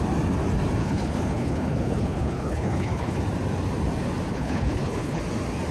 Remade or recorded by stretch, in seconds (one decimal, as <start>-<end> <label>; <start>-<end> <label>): 0.0-0.8 recorded; 0.8-3.2 remade; 3.2-4.3 recorded; 4.3-5.2 remade; 5.2-5.7 recorded